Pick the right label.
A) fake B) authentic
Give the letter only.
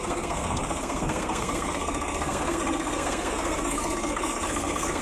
A